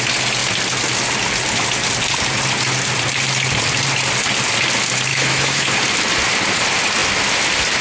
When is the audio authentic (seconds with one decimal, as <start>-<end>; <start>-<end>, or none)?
0.0-5.1; 5.7-7.8